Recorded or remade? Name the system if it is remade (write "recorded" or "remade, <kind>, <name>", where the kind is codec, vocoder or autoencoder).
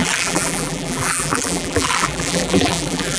remade, vocoder, BigVGAN v2